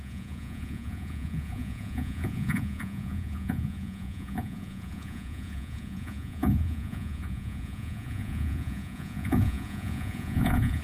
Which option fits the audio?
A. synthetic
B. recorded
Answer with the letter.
A